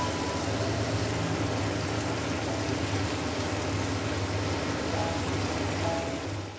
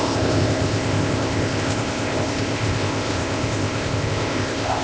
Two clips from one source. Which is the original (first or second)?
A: first